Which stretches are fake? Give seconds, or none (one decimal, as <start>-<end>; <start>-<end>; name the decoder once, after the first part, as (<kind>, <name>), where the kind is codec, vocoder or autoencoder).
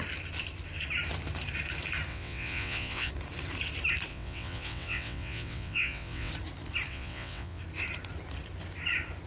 2.1-3.1 (vocoder, WaveNeXt); 4.1-6.3; 6.9-7.6